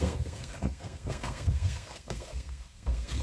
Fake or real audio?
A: fake